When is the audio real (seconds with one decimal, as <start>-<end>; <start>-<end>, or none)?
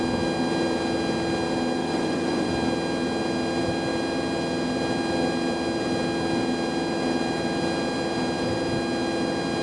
0.0-1.8; 2.5-9.6